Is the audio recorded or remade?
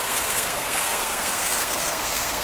remade